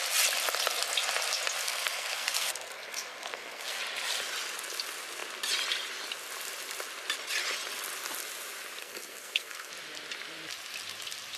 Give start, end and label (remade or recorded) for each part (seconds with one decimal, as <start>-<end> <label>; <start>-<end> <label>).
0.0-1.6 recorded; 1.6-3.8 remade; 3.8-8.8 recorded; 8.8-9.7 remade; 9.7-11.4 recorded